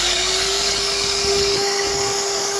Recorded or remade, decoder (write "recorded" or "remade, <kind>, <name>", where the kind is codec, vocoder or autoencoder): remade, codec, DAC